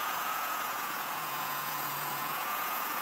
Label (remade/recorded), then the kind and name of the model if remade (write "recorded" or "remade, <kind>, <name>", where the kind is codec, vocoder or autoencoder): remade, vocoder, Vocos